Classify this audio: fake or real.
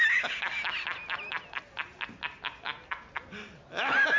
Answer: real